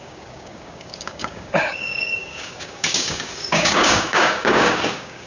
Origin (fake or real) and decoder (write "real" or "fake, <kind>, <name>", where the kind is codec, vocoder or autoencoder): fake, codec, DAC